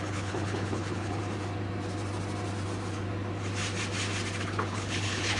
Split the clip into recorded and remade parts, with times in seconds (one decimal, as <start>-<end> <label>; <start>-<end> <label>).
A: 0.0-1.2 remade; 1.2-4.4 recorded; 4.4-5.4 remade